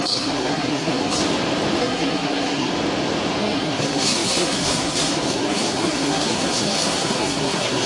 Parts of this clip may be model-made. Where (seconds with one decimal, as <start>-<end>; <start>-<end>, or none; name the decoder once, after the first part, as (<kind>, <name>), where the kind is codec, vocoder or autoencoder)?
0.0-1.2 (codec, SNAC); 1.8-2.7; 3.4-7.9